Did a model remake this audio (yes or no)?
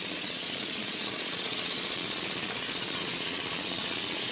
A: yes